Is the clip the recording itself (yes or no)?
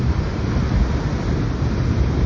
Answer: yes